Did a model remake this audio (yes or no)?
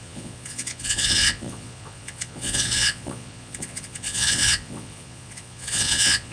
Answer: yes